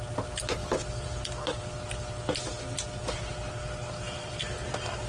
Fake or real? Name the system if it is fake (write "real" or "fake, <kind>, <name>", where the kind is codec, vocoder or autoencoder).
real